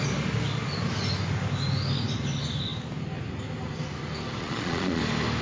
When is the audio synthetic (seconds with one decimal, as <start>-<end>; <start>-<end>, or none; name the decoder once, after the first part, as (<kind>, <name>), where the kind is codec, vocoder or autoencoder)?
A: 4.4-5.0 (vocoder, Vocos)